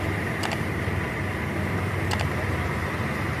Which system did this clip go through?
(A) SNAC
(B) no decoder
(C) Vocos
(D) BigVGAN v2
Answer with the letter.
D